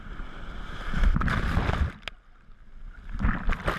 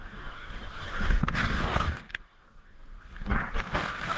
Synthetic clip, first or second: second